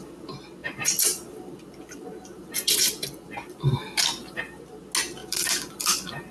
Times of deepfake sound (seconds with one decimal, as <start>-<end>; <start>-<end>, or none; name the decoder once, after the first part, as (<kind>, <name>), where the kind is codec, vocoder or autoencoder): 0.6-4.4 (vocoder, BigVGAN v2); 5.2-6.3